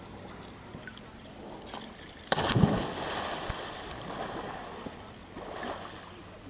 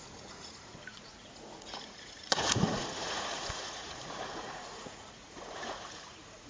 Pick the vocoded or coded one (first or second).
second